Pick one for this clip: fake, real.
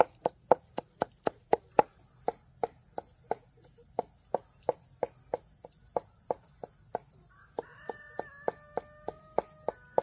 real